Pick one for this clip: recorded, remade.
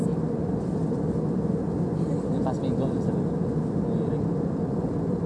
recorded